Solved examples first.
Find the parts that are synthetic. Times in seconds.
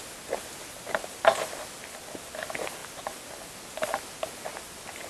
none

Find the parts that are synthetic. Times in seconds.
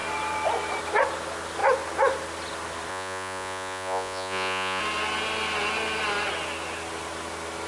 2.9-4.8 (vocoder, Vocos)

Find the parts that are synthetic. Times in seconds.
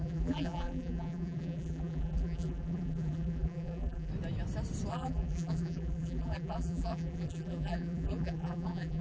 0.0-4.1 (vocoder, BigVGAN v2); 4.9-9.0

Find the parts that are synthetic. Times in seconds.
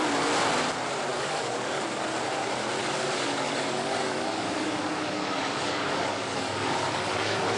1.1-1.8 (codec, DAC); 2.8-7.6